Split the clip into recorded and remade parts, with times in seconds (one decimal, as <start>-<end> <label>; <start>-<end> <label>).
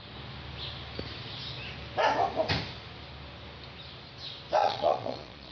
0.0-4.6 recorded; 4.6-5.5 remade